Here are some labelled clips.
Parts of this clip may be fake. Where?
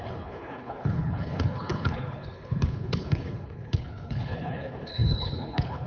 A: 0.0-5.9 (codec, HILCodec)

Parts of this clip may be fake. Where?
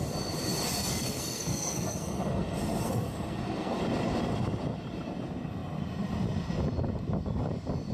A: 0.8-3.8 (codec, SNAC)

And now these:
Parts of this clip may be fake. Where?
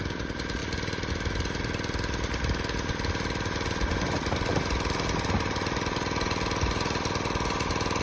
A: none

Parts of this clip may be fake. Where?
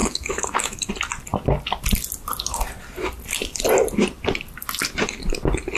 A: 0.0-0.9 (autoencoder, DAC-VAE)